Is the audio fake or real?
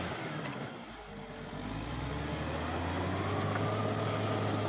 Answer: real